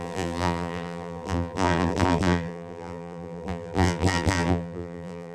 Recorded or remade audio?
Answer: remade